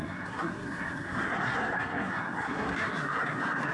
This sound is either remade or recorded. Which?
remade